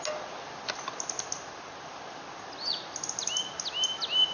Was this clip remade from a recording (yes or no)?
no